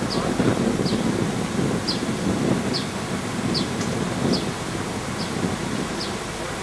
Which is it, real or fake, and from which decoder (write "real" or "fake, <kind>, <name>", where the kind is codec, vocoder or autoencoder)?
real